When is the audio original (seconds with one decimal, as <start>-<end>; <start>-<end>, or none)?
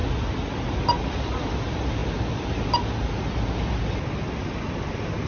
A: 0.0-5.3